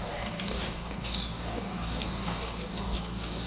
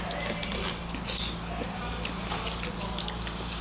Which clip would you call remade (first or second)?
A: first